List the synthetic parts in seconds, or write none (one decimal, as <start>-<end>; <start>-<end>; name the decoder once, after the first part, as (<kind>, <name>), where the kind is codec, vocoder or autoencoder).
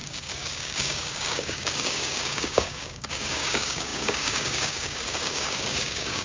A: 0.0-6.2 (codec, DAC)